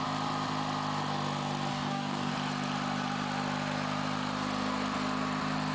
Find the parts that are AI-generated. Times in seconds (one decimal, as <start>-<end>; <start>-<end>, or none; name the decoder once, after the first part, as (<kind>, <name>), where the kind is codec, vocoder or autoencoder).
1.7-2.3 (codec, DAC)